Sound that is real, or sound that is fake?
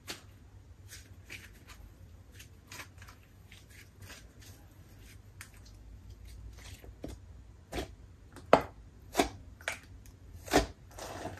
real